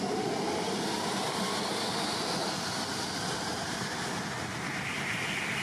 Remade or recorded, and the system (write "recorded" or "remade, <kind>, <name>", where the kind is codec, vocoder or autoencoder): recorded